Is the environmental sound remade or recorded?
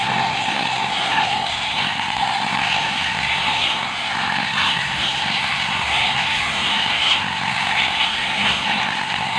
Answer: remade